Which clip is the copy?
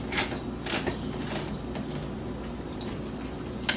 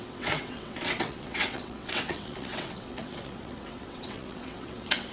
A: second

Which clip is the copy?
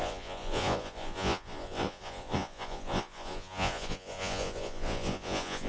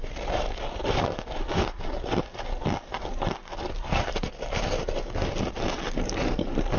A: first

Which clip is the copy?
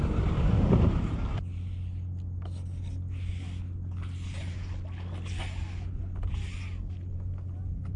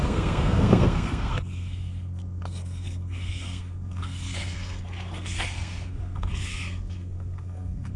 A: second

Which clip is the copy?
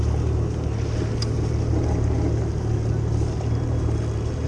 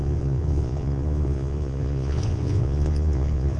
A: second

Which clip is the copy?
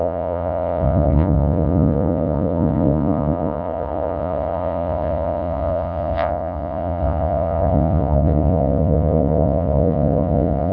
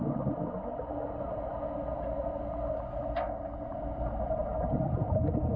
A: first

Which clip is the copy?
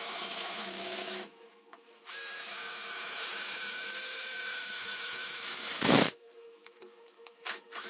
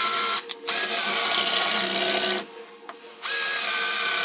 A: first